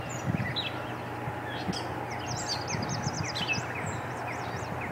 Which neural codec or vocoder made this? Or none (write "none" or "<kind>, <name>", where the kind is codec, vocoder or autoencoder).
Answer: none